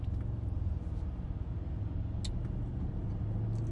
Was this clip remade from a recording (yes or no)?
no